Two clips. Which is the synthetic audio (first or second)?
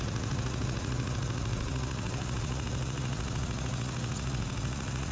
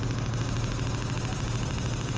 first